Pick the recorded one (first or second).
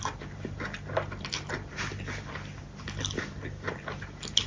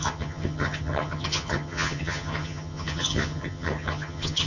first